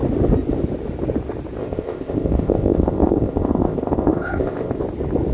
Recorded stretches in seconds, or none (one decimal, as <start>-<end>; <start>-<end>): 0.0-1.6; 4.8-5.3